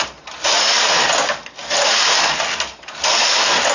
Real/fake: real